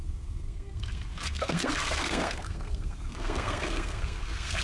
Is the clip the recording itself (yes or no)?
no